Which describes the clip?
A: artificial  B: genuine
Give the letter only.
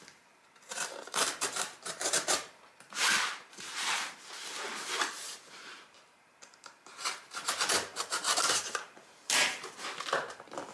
A